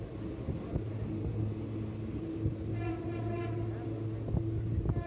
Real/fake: real